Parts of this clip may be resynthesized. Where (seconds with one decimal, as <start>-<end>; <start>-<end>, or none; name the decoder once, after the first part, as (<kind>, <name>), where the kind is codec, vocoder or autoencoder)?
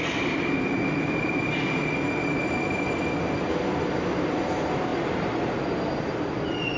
none